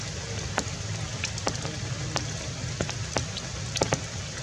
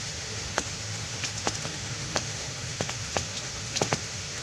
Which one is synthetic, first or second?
second